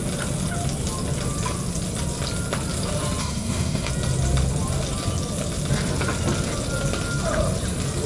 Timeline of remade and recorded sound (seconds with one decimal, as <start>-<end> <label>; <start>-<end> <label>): 0.0-3.2 recorded; 3.2-3.9 remade; 3.9-8.1 recorded

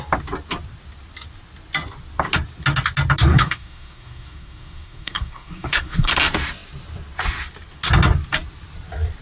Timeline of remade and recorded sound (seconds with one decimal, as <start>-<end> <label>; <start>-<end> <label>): 0.0-3.3 recorded; 3.3-6.1 remade; 6.1-9.2 recorded